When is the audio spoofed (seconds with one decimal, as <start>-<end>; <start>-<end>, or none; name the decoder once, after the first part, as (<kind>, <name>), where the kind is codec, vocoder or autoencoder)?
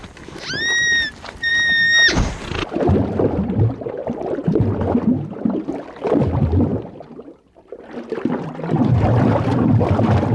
none